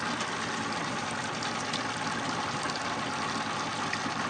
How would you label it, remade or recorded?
recorded